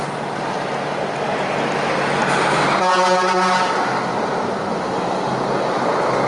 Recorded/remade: recorded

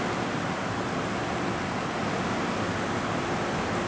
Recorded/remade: recorded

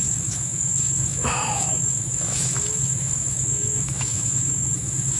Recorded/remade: remade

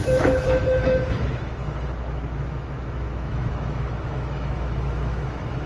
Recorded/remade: remade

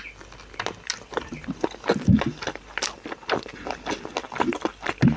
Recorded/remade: recorded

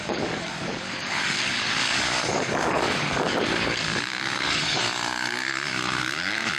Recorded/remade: remade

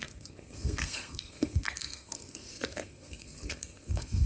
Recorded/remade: remade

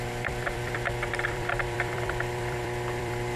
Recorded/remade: remade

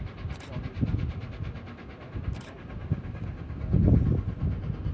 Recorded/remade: recorded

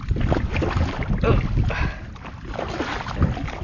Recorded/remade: recorded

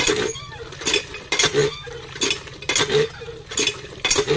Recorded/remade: recorded